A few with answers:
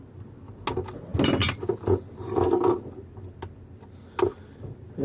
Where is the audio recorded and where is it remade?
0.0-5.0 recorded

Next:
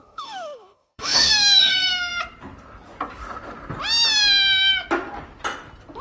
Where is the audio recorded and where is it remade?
0.0-2.1 remade; 2.1-6.0 recorded

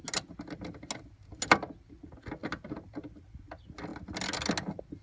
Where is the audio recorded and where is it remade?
0.0-5.0 recorded

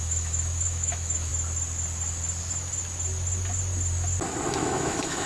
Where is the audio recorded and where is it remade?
0.0-1.3 remade; 1.3-4.5 recorded; 4.5-5.3 remade

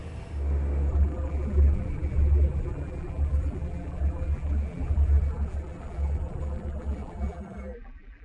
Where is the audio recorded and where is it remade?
0.0-0.9 recorded; 0.9-8.2 remade

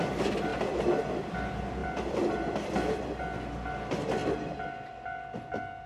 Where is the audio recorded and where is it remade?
0.0-0.5 recorded; 0.5-1.3 remade; 1.3-1.8 recorded; 1.8-3.0 remade; 3.0-4.2 recorded; 4.2-5.9 remade